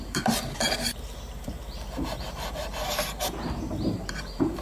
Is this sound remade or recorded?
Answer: remade